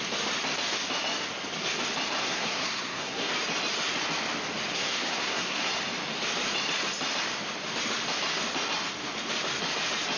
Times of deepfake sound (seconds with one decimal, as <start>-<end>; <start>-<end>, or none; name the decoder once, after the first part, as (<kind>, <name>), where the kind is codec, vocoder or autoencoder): 2.2-3.3 (codec, SNAC); 4.7-5.7